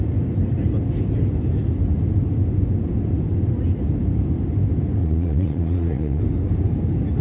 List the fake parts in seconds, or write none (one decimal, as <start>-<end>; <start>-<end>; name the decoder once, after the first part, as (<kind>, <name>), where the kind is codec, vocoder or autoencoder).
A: 5.0-6.2 (vocoder, Vocos)